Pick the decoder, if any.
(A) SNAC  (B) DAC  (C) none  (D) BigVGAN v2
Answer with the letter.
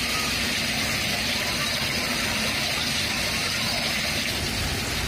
C